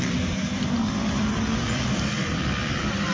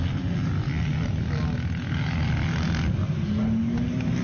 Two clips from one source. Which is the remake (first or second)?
first